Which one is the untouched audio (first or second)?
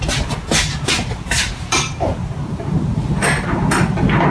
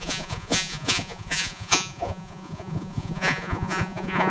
first